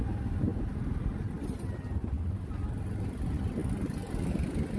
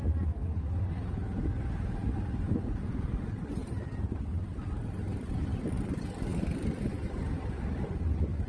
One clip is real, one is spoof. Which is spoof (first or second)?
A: second